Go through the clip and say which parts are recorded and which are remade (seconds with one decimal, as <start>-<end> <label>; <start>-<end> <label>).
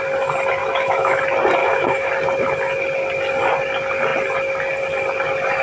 0.0-0.6 recorded; 0.6-1.2 remade; 1.2-1.6 recorded; 1.6-2.1 remade; 2.1-5.6 recorded